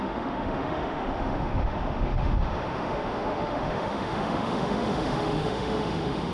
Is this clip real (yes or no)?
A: no